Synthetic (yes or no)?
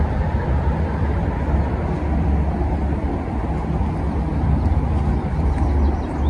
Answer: yes